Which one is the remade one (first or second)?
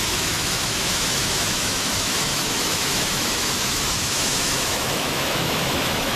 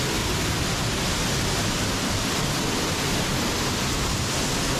first